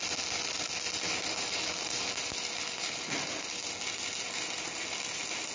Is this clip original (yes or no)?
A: yes